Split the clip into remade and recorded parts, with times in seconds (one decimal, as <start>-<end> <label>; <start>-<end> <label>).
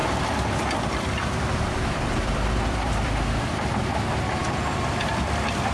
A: 0.0-5.7 remade